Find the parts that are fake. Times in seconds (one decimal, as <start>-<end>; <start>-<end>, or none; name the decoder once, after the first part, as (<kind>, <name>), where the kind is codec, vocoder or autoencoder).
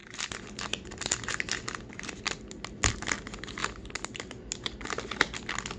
none